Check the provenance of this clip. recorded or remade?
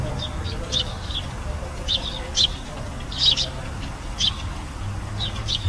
remade